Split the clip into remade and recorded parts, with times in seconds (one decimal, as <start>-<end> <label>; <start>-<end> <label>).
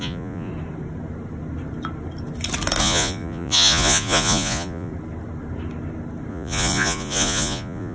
0.0-0.5 remade; 0.5-2.8 recorded; 2.8-4.9 remade; 4.9-6.3 recorded; 6.3-7.9 remade